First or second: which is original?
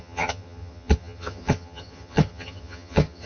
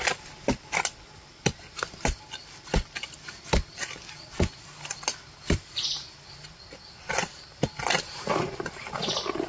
second